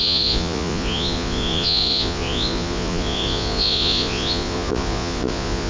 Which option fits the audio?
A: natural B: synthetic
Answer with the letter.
B